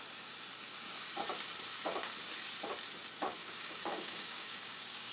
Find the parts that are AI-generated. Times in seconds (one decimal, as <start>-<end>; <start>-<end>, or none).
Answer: 3.4-5.1